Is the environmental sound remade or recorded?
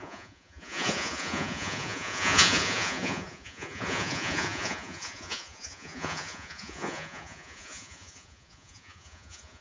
remade